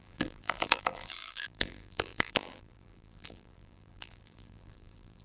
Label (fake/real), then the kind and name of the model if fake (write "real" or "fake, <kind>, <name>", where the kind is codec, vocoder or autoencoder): fake, vocoder, BigVGAN v2